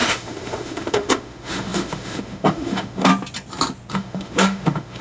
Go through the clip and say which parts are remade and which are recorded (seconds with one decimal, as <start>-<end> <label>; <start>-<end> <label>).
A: 0.0-3.1 remade; 3.1-3.9 recorded; 3.9-5.0 remade